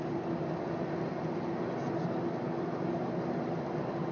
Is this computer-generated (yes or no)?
no